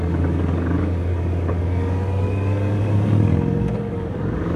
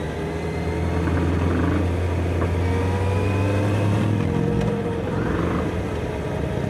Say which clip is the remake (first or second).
first